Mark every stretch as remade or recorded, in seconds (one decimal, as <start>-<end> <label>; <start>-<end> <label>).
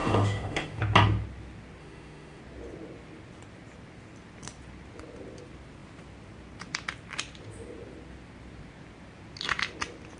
0.0-0.8 remade; 0.8-1.8 recorded; 1.8-2.4 remade; 2.4-10.2 recorded